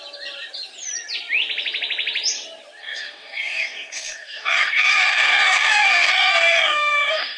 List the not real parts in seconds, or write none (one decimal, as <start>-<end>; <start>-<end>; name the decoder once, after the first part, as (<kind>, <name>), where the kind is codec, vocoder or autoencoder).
2.8-7.4 (codec, DAC)